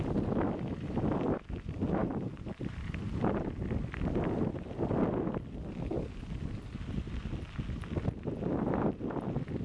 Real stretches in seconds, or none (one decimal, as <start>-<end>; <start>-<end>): 0.0-2.0; 3.4-9.6